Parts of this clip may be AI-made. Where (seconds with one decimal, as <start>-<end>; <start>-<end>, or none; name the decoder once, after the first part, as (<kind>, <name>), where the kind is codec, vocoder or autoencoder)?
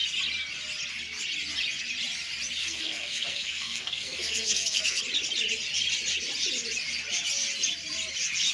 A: 2.6-5.0 (codec, SNAC)